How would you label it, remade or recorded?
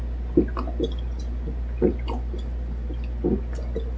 recorded